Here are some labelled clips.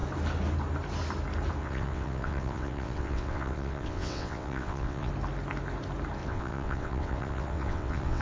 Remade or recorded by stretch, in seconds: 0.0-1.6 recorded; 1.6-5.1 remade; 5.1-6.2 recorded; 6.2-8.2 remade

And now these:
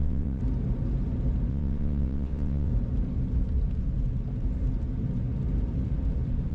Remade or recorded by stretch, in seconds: 0.0-0.4 remade; 0.4-1.5 recorded; 1.5-2.7 remade; 2.7-6.5 recorded

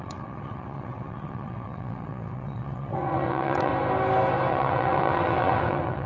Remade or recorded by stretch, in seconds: 0.0-3.7 remade; 3.7-4.5 recorded; 4.5-6.1 remade

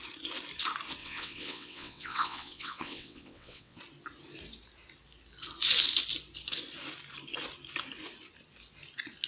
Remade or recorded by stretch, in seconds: 0.0-1.0 recorded; 1.0-3.8 remade; 3.8-9.3 recorded